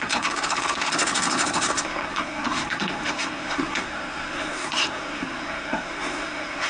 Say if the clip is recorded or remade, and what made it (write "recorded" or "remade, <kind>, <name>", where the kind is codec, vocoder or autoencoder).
remade, codec, SNAC